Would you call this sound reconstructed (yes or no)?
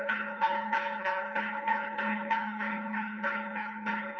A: yes